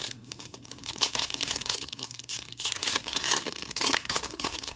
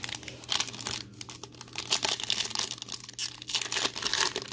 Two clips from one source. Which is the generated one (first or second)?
first